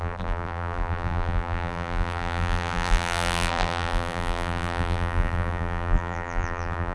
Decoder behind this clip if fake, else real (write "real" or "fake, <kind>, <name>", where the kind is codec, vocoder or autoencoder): fake, vocoder, BigVGAN v2